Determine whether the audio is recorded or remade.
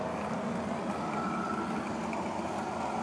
recorded